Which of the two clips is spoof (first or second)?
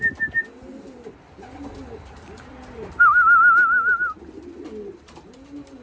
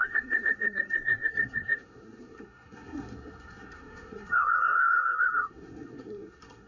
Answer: second